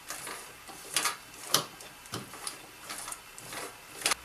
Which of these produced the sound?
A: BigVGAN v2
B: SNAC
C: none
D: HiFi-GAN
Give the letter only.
A